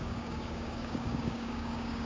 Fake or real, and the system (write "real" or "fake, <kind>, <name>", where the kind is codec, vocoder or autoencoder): fake, codec, DAC